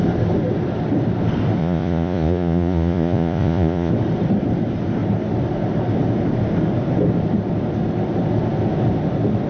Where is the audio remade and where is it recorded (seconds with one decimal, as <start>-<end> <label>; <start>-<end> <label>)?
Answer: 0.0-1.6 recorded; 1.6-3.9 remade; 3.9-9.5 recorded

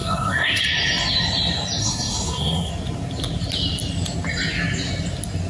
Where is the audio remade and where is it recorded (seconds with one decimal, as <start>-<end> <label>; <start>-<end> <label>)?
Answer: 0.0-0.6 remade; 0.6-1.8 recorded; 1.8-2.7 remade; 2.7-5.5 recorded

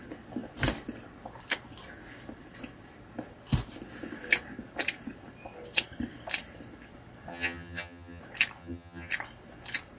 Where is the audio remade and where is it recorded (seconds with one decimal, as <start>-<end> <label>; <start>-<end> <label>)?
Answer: 0.0-7.3 recorded; 7.3-8.2 remade; 8.2-8.6 recorded; 8.6-9.1 remade; 9.1-10.0 recorded

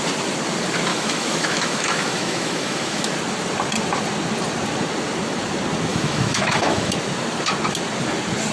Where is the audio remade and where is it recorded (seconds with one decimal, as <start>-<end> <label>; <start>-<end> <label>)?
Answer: 0.0-0.9 recorded; 0.9-3.1 remade; 3.1-5.9 recorded; 5.9-6.9 remade; 6.9-8.5 recorded

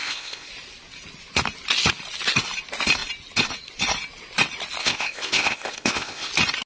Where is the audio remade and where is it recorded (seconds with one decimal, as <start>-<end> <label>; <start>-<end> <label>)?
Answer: 0.0-0.5 remade; 0.5-4.8 recorded; 4.8-6.3 remade; 6.3-6.7 recorded

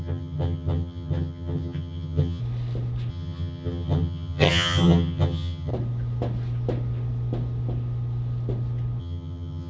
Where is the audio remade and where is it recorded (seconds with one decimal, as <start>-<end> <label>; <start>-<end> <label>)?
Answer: 0.0-2.4 remade; 2.4-3.1 recorded; 3.1-5.7 remade; 5.7-9.0 recorded; 9.0-9.7 remade

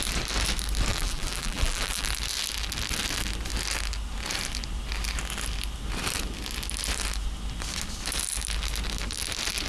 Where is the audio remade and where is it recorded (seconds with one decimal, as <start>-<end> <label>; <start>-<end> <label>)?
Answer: 0.0-0.9 recorded; 0.9-2.1 remade; 2.1-9.7 recorded